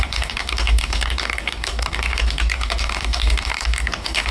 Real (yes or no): no